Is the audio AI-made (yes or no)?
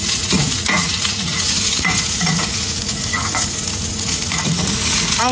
yes